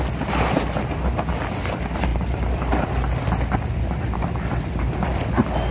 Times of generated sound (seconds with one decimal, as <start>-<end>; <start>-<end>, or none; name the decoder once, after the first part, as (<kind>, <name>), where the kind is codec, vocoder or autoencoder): none